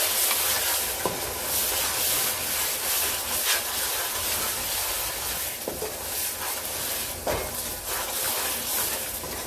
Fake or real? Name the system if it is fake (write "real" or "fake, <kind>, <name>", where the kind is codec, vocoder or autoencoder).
real